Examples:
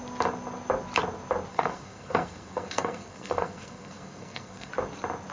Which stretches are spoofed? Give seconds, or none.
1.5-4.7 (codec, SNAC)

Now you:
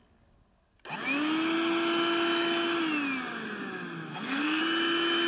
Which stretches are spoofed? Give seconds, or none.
4.1-4.6 (codec, SNAC)

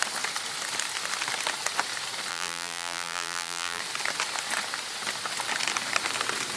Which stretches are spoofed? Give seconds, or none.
2.3-3.8 (vocoder, BigVGAN v2)

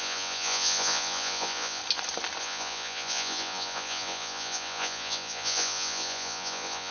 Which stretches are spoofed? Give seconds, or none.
0.0-1.8 (vocoder, Vocos); 2.4-6.9